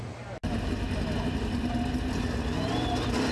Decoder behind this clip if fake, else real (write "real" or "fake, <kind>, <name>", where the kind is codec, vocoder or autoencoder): real